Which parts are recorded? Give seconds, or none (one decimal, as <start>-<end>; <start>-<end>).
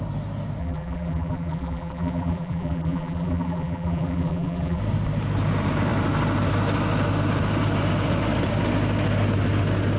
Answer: 0.0-0.6; 4.8-10.0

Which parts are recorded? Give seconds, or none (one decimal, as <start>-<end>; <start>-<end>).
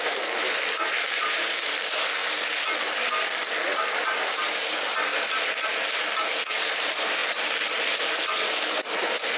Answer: 2.2-3.2; 5.1-6.5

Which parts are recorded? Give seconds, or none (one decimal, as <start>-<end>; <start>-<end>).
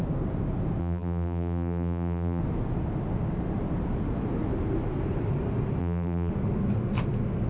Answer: 0.0-0.8; 2.4-5.8; 6.3-7.5